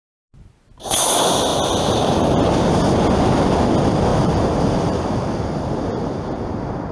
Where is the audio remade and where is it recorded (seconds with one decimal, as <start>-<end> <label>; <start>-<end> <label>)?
0.0-4.1 recorded; 4.1-6.4 remade; 6.4-6.9 recorded